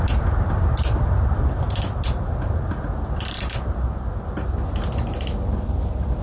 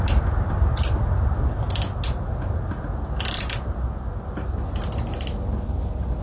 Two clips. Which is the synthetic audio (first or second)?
first